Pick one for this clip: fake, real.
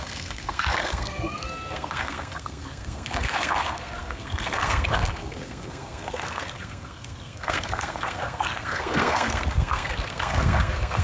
fake